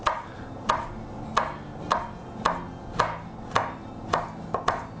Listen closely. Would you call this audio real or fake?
real